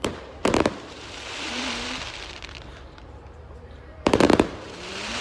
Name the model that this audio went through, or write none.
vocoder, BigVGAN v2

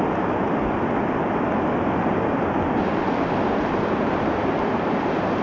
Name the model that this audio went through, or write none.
none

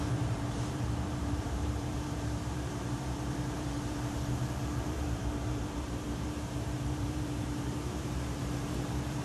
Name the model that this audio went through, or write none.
vocoder, BigVGAN v2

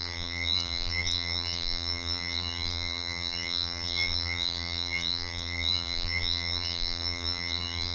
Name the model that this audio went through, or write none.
vocoder, BigVGAN v2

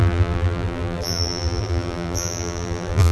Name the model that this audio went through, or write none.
vocoder, BigVGAN v2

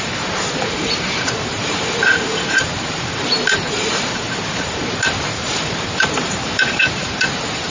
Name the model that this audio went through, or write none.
vocoder, BigVGAN v2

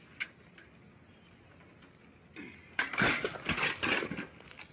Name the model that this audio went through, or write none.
none